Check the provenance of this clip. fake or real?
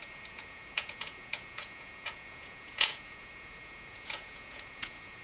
fake